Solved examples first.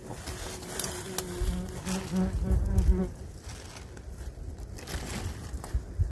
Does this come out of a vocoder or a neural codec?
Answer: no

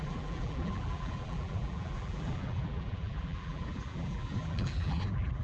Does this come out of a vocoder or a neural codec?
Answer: yes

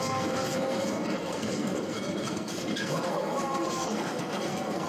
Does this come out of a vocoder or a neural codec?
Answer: yes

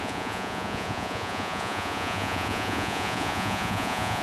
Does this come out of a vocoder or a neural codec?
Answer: yes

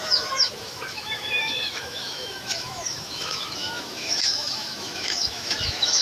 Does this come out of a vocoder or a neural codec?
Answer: yes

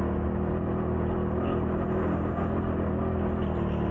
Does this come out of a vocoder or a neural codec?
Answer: no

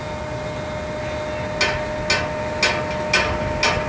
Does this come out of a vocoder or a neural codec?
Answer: no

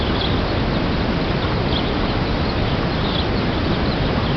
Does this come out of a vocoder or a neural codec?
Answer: no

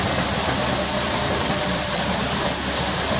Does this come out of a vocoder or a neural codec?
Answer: yes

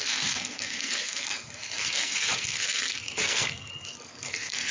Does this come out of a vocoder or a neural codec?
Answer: yes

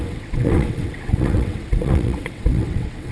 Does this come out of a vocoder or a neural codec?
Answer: yes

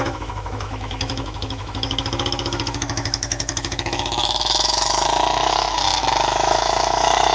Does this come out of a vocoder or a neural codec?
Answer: yes